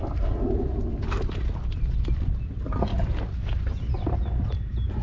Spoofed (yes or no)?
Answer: no